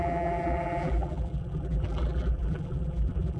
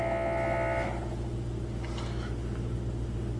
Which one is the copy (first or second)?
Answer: first